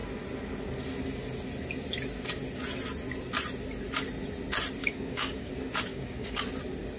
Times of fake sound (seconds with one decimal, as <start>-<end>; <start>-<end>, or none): 4.8-5.5; 5.9-6.4